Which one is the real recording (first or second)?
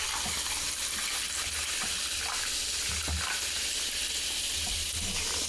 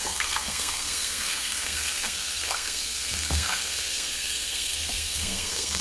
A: first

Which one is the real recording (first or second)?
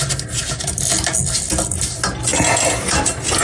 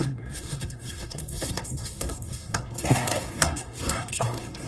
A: first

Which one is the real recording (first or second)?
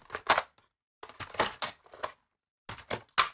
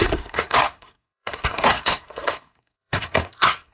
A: first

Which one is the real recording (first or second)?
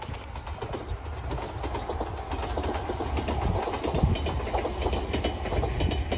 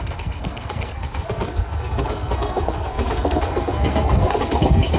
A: first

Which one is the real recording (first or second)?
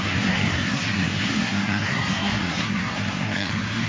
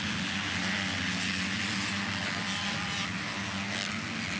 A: second